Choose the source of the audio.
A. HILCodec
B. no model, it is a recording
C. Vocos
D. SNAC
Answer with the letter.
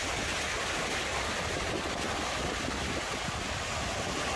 B